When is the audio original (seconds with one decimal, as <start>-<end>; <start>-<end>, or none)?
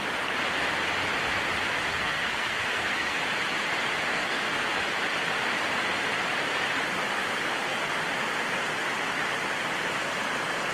0.0-1.9; 3.2-4.1; 4.8-10.7